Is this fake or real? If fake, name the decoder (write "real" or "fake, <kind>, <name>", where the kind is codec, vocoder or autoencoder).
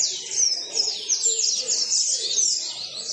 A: real